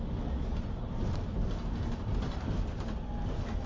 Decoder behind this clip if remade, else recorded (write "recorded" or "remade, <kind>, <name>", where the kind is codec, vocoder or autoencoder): recorded